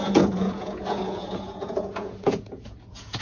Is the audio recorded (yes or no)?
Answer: no